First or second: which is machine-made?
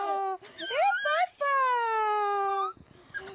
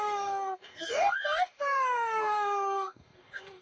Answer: second